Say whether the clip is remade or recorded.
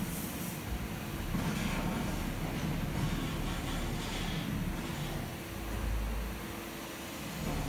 recorded